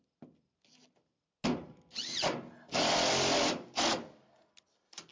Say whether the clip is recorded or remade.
recorded